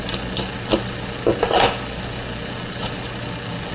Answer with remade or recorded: recorded